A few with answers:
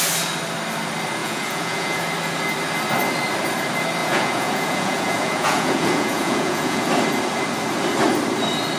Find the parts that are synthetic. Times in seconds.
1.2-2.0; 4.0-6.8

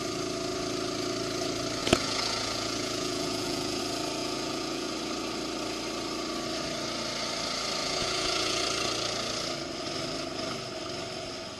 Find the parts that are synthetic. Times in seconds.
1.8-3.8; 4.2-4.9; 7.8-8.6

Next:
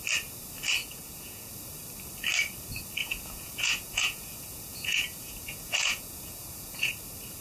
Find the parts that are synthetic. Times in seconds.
0.8-1.5; 3.0-6.9